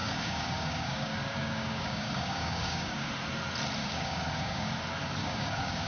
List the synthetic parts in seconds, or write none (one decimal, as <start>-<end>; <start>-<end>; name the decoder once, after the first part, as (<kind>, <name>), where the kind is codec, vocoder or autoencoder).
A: 0.0-3.1 (codec, DAC); 3.8-4.7; 5.2-5.9